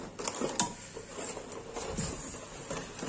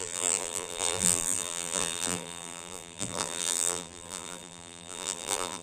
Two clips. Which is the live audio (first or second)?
first